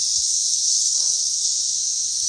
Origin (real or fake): fake